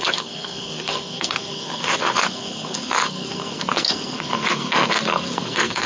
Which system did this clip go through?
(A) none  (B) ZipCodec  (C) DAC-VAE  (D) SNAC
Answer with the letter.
D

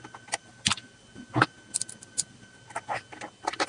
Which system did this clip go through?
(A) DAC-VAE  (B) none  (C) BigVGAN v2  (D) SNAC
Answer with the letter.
B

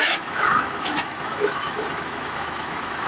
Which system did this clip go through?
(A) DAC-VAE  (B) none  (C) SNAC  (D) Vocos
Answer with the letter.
A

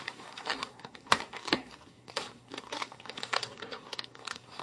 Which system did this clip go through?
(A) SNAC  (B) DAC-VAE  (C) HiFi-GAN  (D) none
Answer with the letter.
A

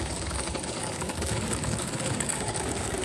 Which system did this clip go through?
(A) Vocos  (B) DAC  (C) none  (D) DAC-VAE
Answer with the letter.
B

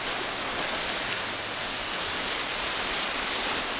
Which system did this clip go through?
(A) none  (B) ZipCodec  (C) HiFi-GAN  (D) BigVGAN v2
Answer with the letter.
A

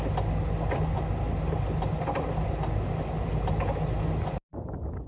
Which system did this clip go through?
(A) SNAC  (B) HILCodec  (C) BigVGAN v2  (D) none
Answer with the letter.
D